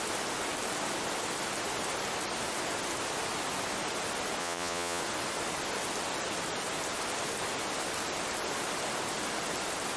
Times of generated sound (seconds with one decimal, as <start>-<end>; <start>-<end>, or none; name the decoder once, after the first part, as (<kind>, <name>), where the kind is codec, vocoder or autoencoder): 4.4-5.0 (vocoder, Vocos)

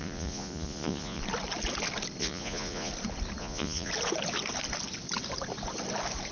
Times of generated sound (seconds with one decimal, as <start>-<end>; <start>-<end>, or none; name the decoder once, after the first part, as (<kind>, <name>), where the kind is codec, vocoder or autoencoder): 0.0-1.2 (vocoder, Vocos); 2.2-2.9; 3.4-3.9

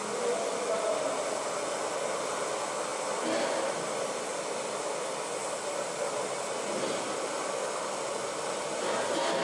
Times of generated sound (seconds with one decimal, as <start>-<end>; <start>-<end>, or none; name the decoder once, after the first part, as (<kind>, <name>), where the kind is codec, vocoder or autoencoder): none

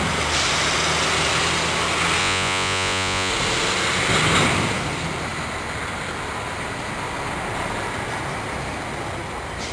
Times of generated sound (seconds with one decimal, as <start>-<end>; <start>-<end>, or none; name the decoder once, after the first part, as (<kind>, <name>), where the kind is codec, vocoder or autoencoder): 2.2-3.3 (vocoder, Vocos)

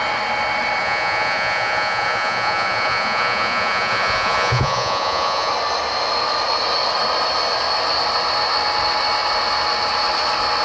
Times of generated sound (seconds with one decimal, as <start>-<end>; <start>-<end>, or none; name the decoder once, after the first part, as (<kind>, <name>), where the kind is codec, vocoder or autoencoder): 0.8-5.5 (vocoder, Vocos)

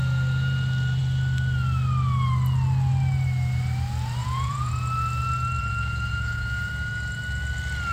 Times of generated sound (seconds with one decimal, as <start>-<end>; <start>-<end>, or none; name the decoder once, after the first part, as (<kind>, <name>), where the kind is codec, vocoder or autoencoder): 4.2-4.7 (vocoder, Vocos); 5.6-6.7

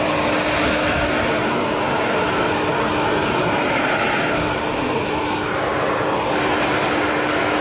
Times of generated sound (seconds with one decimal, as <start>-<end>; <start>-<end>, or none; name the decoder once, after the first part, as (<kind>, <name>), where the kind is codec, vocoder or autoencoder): none

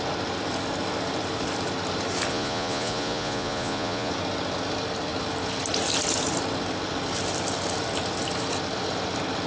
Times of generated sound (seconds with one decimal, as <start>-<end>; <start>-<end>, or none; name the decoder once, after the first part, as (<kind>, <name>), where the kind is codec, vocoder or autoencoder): 2.3-4.1 (vocoder, Vocos)